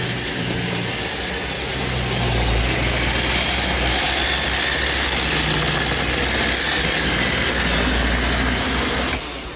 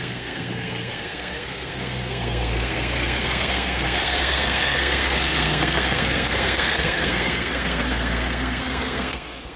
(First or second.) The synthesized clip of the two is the second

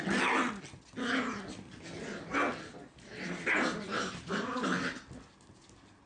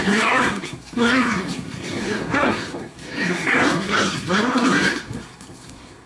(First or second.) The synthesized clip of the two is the second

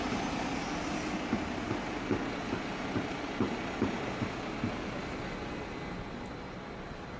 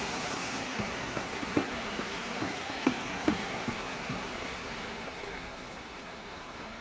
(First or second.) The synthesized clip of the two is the second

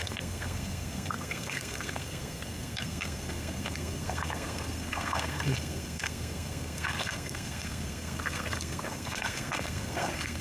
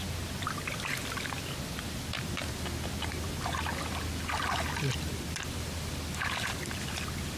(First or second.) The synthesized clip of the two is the first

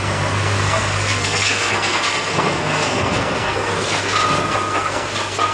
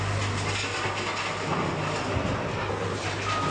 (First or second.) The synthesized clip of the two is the first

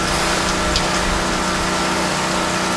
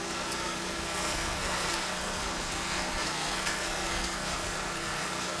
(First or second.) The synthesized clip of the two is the second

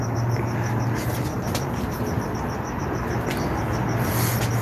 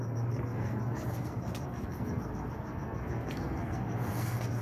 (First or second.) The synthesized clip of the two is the second